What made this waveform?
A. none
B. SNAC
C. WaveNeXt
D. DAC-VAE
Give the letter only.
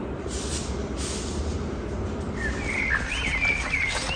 A